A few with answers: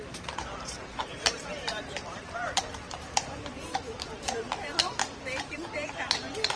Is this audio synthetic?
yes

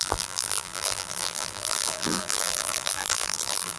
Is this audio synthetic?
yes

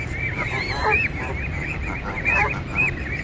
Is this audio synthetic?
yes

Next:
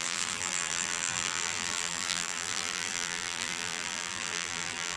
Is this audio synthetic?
yes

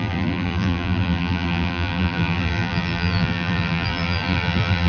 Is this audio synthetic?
yes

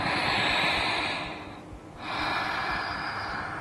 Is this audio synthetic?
no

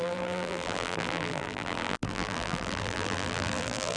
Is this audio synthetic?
yes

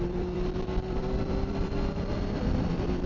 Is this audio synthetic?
yes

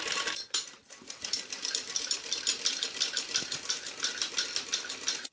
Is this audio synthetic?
yes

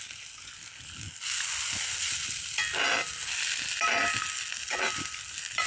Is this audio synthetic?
no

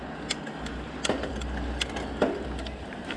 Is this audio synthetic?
yes